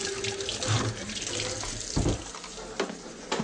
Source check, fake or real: real